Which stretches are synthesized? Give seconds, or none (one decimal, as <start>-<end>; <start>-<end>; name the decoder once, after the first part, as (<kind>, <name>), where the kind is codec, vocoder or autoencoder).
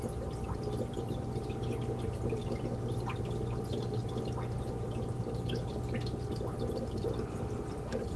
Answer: none